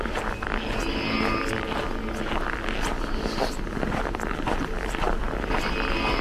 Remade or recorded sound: recorded